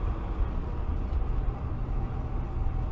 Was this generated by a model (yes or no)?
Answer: no